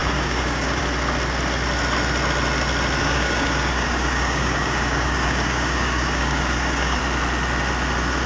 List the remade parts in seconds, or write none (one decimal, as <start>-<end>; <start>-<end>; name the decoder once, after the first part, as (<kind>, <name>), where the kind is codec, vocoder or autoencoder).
0.0-0.8 (codec, DAC); 3.0-7.0